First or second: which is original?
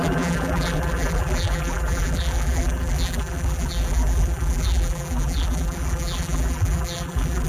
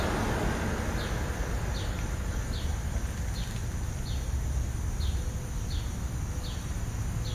second